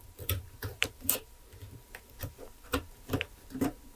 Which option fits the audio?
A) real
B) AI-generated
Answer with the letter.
B